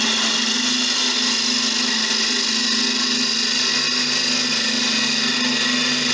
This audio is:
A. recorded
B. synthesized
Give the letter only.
A